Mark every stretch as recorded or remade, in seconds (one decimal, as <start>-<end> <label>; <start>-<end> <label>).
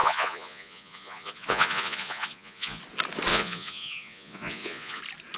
0.0-2.8 remade; 2.8-3.3 recorded; 3.3-5.0 remade; 5.0-5.4 recorded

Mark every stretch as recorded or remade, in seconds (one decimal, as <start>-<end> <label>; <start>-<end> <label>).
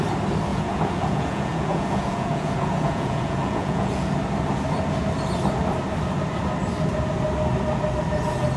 0.0-0.5 recorded; 0.5-4.1 remade; 4.1-8.6 recorded